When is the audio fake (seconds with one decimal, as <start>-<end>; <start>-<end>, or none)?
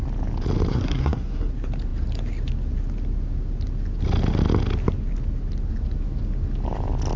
0.7-1.5